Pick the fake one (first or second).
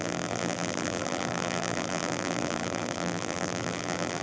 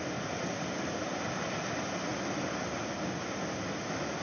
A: first